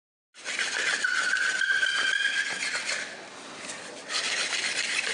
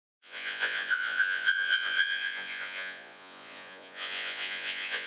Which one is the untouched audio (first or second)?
first